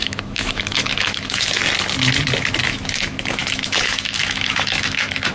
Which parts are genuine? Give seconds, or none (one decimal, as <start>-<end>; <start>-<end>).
1.6-2.6

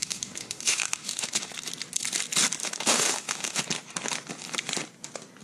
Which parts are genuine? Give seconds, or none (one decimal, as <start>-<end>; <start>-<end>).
1.5-2.6; 3.6-5.4

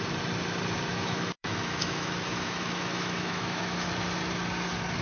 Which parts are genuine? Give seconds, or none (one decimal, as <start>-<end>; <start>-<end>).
0.0-0.9; 3.9-5.0